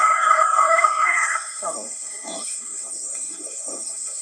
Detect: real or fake fake